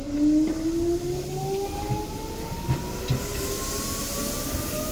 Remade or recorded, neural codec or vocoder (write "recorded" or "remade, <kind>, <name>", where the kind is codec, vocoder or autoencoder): recorded